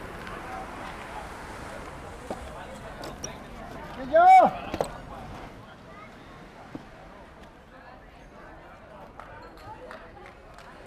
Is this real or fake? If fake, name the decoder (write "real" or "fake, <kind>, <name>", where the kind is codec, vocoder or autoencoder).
real